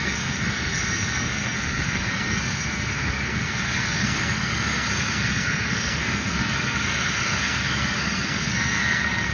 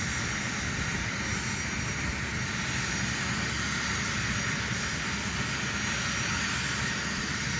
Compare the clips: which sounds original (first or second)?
second